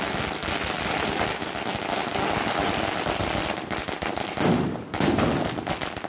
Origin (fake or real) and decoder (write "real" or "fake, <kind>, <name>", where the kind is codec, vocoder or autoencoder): real